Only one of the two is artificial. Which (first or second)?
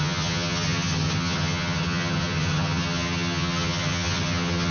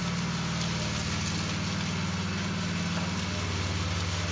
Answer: first